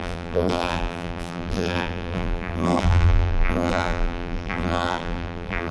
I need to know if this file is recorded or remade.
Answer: remade